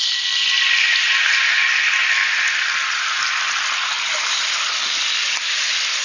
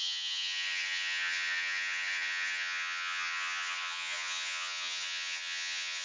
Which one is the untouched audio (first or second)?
first